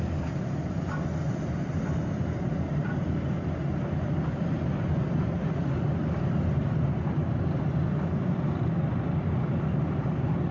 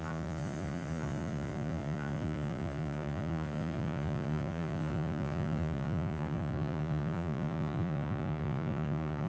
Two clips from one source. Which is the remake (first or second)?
second